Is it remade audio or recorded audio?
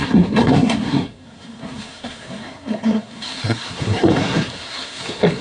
remade